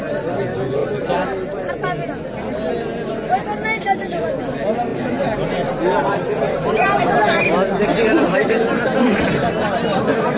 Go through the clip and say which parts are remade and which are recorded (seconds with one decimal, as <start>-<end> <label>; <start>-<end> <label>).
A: 0.0-4.9 recorded; 4.9-7.0 remade; 7.0-7.9 recorded; 7.9-9.2 remade; 9.2-10.4 recorded

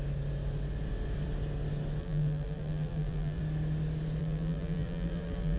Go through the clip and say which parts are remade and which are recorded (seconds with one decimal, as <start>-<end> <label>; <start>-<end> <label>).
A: 0.0-2.0 recorded; 2.0-3.4 remade; 3.4-4.2 recorded; 4.2-5.6 remade

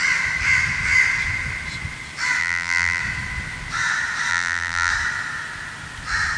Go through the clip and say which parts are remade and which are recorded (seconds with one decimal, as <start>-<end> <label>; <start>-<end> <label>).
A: 0.0-2.4 recorded; 2.4-3.0 remade; 3.0-4.3 recorded; 4.3-4.9 remade; 4.9-6.4 recorded